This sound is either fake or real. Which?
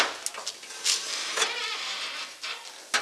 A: real